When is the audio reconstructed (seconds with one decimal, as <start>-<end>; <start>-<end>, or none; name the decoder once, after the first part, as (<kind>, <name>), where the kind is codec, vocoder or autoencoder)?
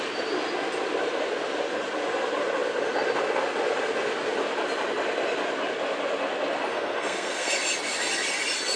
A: 6.7-7.5 (codec, SNAC)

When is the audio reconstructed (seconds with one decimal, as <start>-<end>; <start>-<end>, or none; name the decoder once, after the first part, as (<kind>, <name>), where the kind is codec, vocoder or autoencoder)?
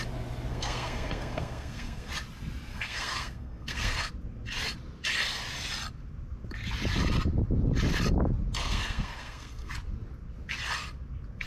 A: 0.5-2.1 (codec, SNAC); 2.7-4.1; 8.6-9.7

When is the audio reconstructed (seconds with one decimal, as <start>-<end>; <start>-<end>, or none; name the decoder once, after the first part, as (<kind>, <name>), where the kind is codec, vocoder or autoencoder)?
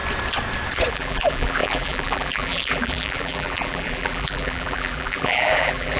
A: 0.9-6.0 (vocoder, BigVGAN v2)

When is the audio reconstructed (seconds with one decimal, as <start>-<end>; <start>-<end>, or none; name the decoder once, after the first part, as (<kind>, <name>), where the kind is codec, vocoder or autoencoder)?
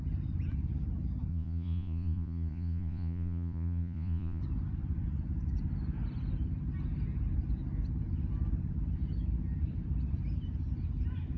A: 1.3-4.4 (vocoder, Vocos)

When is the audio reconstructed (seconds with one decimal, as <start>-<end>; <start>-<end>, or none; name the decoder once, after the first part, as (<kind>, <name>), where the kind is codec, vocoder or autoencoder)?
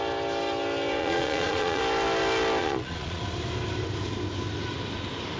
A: 1.0-1.8 (vocoder, Vocos); 2.6-3.2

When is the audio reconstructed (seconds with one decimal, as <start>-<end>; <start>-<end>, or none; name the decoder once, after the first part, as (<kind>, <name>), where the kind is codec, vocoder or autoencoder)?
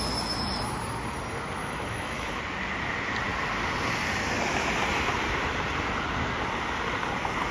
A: 1.6-2.4 (autoencoder, DAC-VAE)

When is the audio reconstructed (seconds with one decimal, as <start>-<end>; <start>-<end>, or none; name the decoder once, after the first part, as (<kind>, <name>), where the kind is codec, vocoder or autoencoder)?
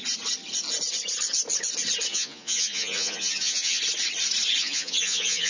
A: 2.1-3.8 (vocoder, Vocos); 4.6-5.5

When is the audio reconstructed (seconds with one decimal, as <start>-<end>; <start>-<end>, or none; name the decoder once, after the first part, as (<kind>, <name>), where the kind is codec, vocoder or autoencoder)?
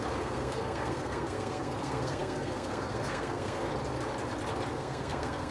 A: 0.0-3.7 (codec, SNAC); 4.7-5.5